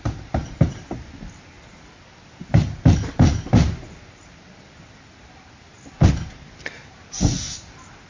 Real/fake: real